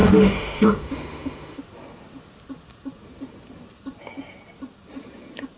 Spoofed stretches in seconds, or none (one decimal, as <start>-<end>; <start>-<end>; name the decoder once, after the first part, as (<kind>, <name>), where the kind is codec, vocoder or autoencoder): 0.0-1.6 (autoencoder, DAC-VAE)